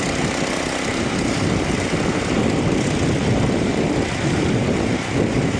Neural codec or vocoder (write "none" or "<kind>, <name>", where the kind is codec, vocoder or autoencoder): none